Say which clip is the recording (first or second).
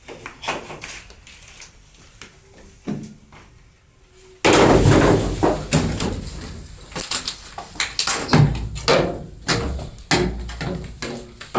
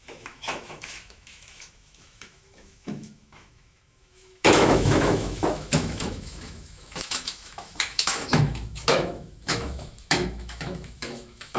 first